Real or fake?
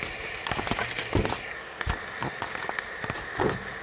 real